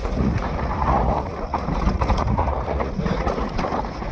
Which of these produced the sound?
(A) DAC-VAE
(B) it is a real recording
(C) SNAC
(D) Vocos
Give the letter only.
D